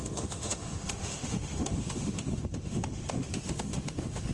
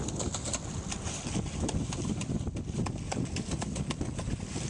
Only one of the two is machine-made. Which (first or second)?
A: first